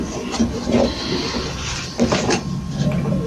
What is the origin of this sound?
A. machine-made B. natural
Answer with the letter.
B